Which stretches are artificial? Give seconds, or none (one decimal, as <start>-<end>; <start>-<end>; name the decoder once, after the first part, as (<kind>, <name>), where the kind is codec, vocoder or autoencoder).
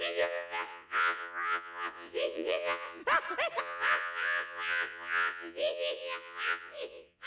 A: 0.0-3.0 (vocoder, Vocos); 3.6-7.3